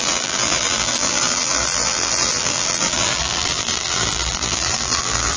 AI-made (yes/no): yes